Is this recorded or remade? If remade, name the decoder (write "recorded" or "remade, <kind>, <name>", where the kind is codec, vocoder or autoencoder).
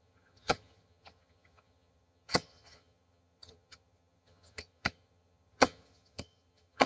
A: remade, vocoder, HiFi-GAN